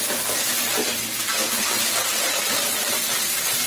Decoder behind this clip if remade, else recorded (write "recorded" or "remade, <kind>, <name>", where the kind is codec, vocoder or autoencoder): recorded